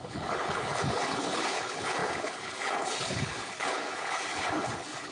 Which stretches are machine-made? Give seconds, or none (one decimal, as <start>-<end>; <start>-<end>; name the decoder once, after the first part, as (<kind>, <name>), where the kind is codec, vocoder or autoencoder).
0.0-5.1 (codec, HILCodec)